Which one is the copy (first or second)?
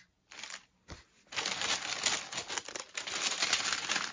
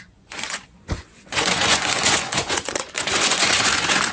second